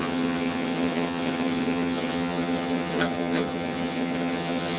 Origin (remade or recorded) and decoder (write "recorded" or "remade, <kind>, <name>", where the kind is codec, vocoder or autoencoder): remade, vocoder, HiFi-GAN